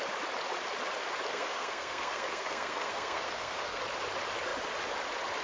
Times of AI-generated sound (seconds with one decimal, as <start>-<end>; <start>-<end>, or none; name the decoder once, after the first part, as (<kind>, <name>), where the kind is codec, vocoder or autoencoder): 1.3-3.8 (codec, SNAC)